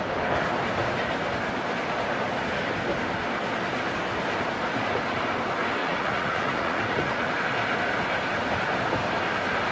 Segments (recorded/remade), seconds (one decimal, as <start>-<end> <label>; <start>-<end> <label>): 0.0-5.8 recorded; 5.8-7.3 remade; 7.3-9.7 recorded